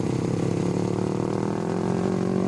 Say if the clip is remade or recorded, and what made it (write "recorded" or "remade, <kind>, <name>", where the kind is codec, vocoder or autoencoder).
recorded